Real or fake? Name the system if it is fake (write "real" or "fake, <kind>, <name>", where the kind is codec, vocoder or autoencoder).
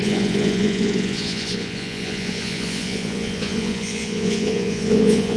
fake, vocoder, Vocos